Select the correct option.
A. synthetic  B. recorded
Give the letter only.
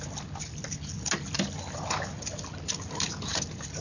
B